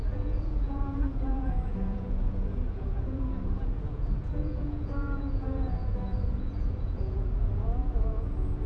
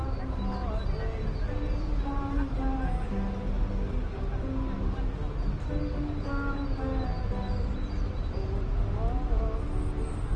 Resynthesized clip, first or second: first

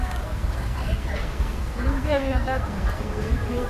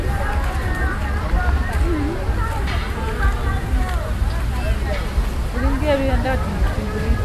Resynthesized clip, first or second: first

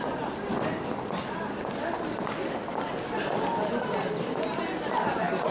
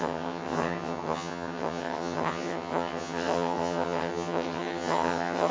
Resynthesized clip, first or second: second